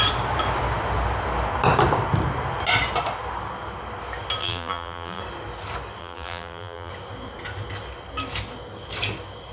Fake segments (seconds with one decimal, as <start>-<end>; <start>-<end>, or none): 4.4-5.2; 6.0-6.9